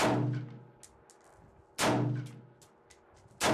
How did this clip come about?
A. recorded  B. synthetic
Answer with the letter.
A